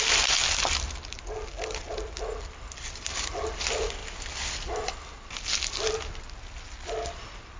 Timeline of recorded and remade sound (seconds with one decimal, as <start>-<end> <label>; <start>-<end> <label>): 0.0-7.6 recorded